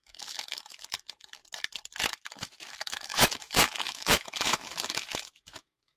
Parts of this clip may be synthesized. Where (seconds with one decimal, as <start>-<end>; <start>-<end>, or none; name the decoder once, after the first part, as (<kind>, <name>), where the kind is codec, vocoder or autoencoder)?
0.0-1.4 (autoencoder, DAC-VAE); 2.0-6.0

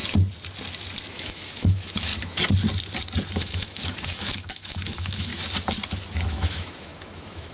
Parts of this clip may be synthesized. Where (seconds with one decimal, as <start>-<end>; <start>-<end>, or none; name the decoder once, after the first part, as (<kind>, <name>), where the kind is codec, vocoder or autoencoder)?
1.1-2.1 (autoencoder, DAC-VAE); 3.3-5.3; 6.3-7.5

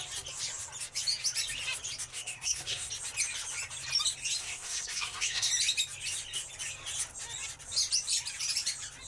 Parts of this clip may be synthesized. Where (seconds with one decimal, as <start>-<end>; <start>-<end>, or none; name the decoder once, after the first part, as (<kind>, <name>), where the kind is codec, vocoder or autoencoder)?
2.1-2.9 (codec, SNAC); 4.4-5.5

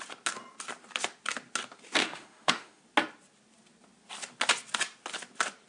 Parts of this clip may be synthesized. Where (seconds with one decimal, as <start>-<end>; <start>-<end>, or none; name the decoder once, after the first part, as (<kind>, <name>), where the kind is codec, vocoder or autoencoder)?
2.0-2.8 (autoencoder, DAC-VAE)

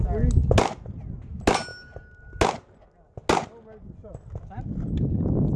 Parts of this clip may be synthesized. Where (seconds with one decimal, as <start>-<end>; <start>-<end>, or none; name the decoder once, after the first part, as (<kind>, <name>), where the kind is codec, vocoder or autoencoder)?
none

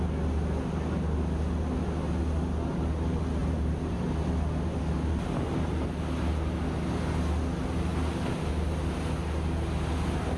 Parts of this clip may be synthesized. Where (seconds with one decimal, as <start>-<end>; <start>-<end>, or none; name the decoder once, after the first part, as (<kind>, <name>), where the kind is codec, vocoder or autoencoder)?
3.4-4.1 (vocoder, BigVGAN v2)

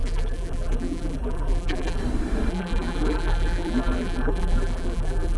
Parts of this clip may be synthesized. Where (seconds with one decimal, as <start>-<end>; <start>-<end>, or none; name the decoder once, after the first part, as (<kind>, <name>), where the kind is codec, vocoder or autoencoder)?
0.0-2.0 (vocoder, BigVGAN v2); 2.5-5.4

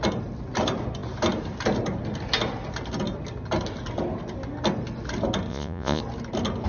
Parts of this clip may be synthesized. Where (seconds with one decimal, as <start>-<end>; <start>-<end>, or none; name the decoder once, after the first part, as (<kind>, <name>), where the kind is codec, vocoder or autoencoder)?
5.5-6.0 (vocoder, Vocos)